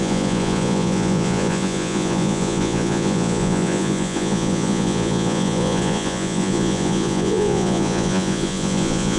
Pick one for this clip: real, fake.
fake